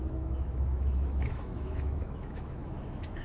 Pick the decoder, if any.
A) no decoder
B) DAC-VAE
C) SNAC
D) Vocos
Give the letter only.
B